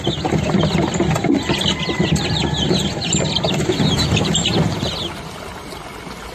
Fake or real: real